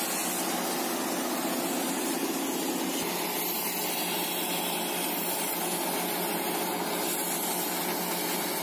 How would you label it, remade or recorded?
recorded